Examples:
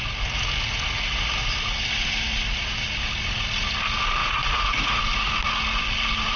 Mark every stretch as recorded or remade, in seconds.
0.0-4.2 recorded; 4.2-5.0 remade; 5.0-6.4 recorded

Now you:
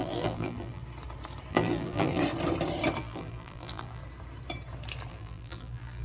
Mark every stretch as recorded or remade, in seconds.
0.0-0.8 remade; 0.8-1.5 recorded; 1.5-2.2 remade; 2.2-3.0 recorded; 3.0-4.0 remade; 4.0-5.1 recorded; 5.1-6.0 remade